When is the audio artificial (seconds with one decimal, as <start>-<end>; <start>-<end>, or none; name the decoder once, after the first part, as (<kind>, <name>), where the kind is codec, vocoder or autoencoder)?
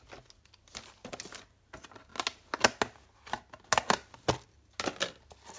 none